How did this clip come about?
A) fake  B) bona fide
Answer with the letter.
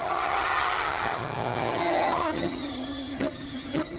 A